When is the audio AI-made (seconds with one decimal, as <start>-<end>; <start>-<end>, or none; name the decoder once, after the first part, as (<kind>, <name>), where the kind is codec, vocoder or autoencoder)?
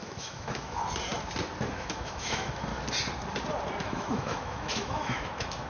0.0-0.8 (autoencoder, DAC-VAE); 1.7-2.7; 3.8-5.7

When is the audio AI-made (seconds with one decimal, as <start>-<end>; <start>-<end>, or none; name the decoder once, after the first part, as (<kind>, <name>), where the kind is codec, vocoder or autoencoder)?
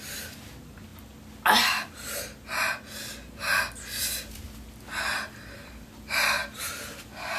0.0-0.9 (vocoder, BigVGAN v2); 5.3-7.4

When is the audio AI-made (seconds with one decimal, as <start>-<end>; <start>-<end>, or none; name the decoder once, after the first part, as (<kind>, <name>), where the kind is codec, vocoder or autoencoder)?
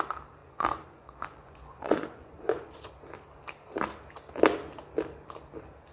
0.4-2.7 (vocoder, Vocos)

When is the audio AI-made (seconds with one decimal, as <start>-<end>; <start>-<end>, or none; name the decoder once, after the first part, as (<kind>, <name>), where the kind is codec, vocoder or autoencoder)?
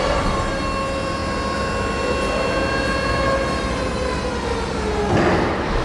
none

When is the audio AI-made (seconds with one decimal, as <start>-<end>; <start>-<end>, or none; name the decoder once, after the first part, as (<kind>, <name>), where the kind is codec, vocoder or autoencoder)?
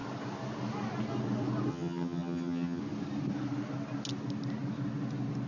1.7-2.8 (vocoder, HiFi-GAN)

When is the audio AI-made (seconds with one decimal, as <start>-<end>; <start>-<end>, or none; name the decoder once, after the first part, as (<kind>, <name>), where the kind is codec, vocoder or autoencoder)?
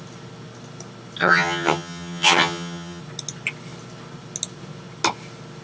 1.2-3.0 (vocoder, HiFi-GAN)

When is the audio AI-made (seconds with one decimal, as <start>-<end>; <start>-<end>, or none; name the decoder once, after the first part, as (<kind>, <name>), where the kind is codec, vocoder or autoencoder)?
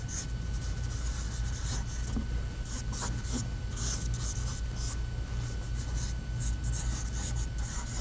none